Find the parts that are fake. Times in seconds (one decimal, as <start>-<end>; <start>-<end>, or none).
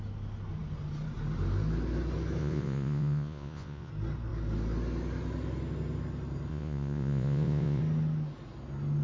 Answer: 2.4-3.9; 6.5-7.8